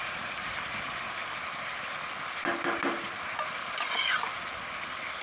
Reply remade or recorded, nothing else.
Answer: recorded